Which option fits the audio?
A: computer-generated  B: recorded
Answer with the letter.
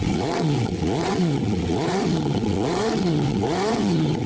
A